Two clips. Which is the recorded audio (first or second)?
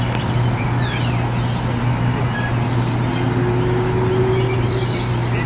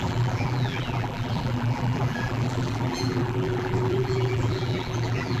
first